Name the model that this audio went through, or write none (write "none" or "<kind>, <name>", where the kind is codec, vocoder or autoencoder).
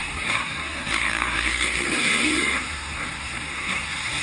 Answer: codec, SNAC